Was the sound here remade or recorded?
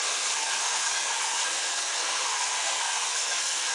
remade